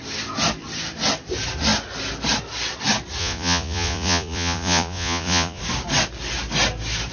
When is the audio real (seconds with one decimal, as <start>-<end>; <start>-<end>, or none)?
0.0-3.2; 5.6-7.1